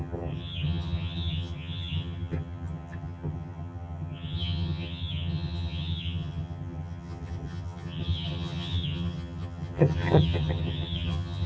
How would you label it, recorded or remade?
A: remade